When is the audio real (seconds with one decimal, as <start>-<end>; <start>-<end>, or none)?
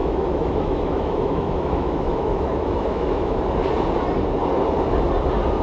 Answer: 3.4-5.6